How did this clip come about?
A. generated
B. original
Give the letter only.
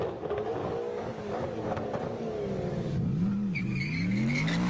A